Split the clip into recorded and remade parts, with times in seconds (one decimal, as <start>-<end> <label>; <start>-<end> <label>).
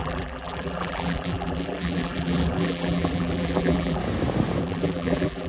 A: 0.0-4.0 remade; 4.0-4.6 recorded; 4.6-5.5 remade